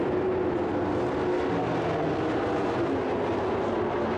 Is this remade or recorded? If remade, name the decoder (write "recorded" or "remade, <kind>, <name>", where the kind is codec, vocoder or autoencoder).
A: recorded